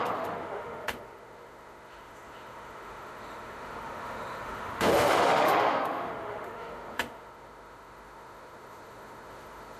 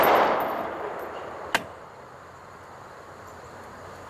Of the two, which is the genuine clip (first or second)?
second